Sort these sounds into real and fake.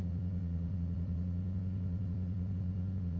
fake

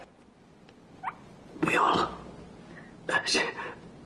real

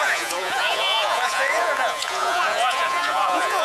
fake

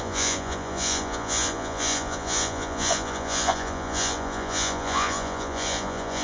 fake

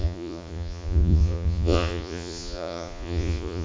fake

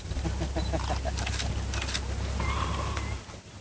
real